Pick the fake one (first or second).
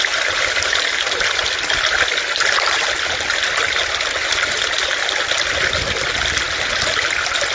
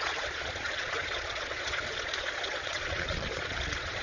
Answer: second